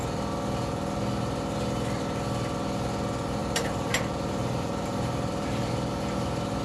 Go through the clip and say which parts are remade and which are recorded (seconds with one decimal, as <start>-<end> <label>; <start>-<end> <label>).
0.0-3.4 recorded; 3.4-6.6 remade